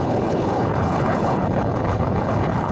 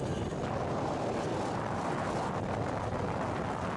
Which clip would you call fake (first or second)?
first